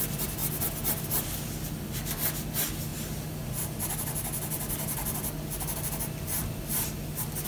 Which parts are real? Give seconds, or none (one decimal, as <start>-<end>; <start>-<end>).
0.0-7.5